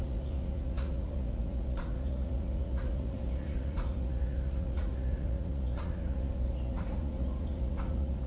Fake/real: fake